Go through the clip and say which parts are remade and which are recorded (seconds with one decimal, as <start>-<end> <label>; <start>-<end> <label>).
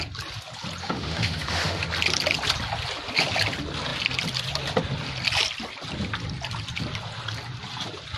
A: 0.0-0.8 recorded; 0.8-1.8 remade; 1.8-8.2 recorded